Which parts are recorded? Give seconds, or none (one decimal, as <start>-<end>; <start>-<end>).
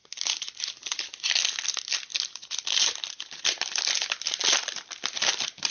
0.0-5.7